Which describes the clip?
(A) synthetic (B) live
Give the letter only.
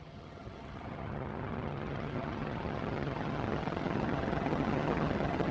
A